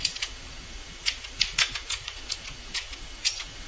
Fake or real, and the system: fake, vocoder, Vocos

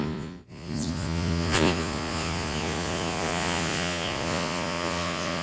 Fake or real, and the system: fake, vocoder, Vocos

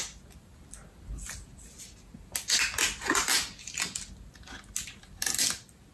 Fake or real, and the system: real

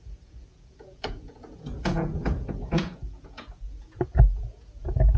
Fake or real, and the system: fake, vocoder, Vocos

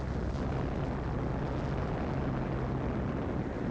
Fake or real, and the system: real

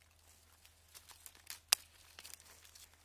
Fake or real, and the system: real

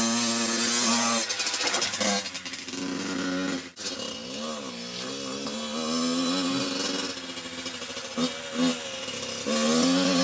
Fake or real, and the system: real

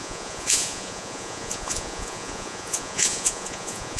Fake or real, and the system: fake, vocoder, Vocos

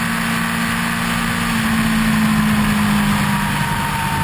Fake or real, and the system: real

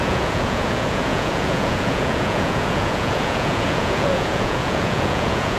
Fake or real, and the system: fake, vocoder, Vocos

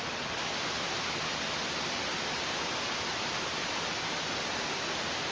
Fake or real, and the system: real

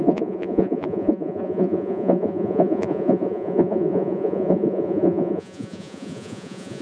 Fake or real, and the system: fake, vocoder, Vocos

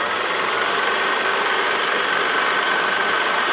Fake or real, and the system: real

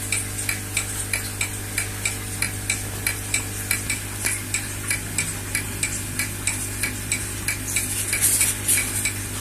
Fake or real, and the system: real